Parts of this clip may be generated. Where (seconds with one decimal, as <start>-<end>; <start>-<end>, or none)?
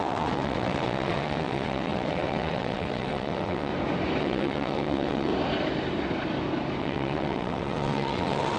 0.0-3.7; 4.2-5.3; 6.8-8.6